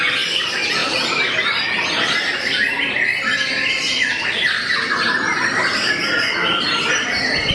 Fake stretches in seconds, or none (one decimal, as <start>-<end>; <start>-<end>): 0.8-1.5